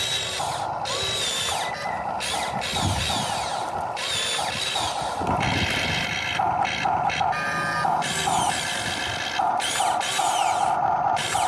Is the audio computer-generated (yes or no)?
no